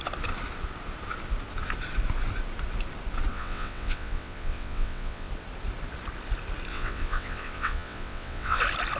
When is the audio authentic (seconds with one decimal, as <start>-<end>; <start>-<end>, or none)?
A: 0.0-3.3; 5.3-6.7; 8.6-9.0